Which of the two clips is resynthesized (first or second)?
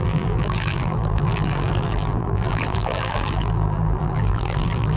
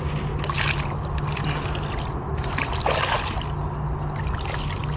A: first